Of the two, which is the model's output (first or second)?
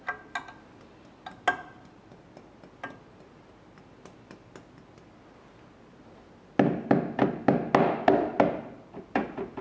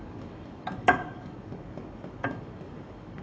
second